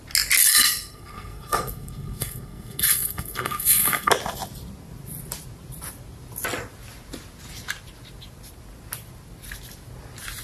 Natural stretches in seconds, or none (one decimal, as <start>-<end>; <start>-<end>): 0.0-0.5; 4.1-10.4